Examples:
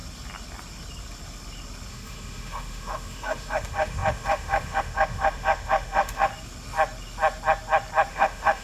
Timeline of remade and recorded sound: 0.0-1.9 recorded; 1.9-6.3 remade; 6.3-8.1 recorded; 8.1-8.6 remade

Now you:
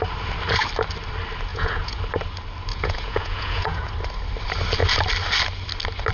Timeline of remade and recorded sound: 0.0-1.5 recorded; 1.5-2.0 remade; 2.0-2.7 recorded; 2.7-3.9 remade; 3.9-6.1 recorded

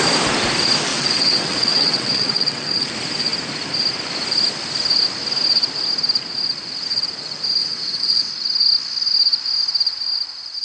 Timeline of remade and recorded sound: 0.0-0.9 recorded; 0.9-2.9 remade; 2.9-7.6 recorded; 7.6-8.3 remade; 8.3-10.6 recorded

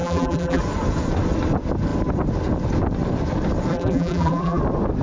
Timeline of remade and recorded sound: 0.0-0.6 remade; 0.6-3.7 recorded; 3.7-4.6 remade; 4.6-5.0 recorded

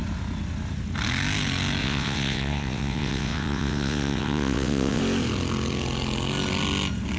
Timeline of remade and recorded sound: 0.0-1.8 recorded; 1.8-5.0 remade; 5.0-7.2 recorded

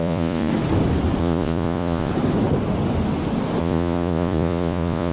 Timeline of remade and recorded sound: 0.0-0.5 remade; 0.5-1.2 recorded; 1.2-2.1 remade; 2.1-3.6 recorded; 3.6-5.1 remade

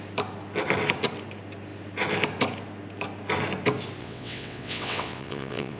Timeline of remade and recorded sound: 0.0-4.0 recorded; 4.0-5.8 remade